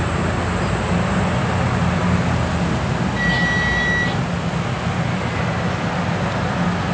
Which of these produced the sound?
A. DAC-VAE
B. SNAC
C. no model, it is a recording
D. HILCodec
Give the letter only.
C